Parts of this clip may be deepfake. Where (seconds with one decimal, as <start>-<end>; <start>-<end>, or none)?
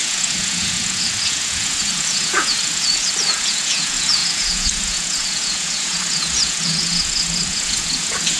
0.0-8.4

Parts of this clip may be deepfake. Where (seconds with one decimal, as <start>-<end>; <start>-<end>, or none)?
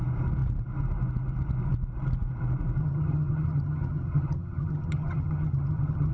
2.8-6.1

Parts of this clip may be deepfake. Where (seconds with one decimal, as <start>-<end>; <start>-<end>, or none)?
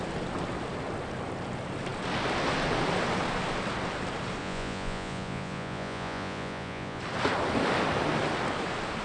4.4-7.0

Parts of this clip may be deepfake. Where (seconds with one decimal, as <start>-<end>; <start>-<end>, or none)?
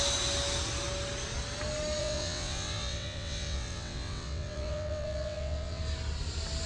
2.0-5.8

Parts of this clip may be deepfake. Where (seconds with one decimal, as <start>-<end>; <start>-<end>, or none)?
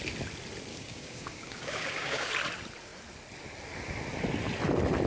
0.7-2.3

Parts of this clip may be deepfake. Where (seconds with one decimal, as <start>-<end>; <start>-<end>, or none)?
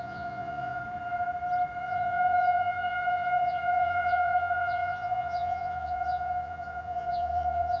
0.0-0.8; 1.8-7.8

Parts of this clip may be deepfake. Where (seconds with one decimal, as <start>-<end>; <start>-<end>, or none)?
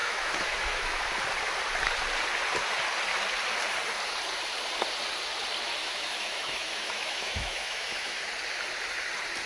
0.0-1.1; 5.8-8.3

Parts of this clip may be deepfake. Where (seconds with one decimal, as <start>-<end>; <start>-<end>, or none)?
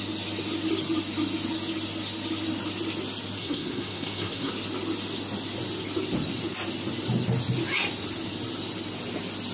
3.4-4.5